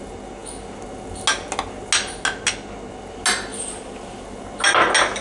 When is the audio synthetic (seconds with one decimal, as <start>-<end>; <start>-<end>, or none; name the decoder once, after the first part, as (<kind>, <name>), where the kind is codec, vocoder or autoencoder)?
3.5-4.3 (vocoder, BigVGAN v2)